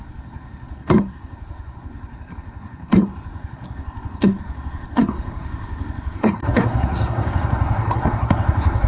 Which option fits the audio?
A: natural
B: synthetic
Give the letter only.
B